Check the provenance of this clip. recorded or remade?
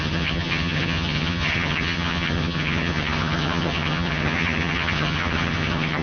remade